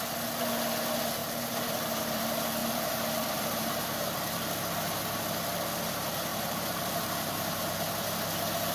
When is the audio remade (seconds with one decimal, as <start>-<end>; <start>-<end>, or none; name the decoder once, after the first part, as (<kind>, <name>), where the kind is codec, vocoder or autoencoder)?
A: 1.2-2.2 (vocoder, BigVGAN v2); 2.6-3.8; 6.3-7.6